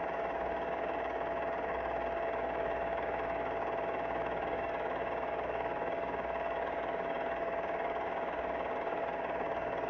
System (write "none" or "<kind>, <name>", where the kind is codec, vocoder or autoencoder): codec, DAC